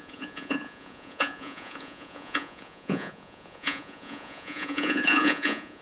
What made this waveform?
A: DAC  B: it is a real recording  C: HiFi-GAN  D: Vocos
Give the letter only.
D